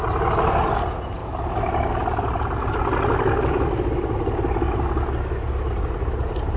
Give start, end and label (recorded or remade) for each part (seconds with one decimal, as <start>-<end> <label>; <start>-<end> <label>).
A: 0.0-6.6 recorded

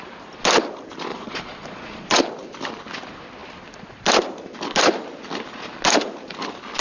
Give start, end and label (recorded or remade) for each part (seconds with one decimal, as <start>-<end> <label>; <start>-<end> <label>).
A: 0.0-1.1 recorded; 1.1-2.2 remade; 2.2-6.8 recorded